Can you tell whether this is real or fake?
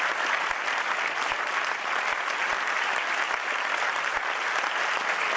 real